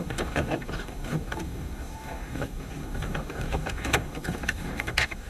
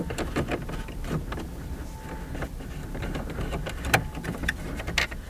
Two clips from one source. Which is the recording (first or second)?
second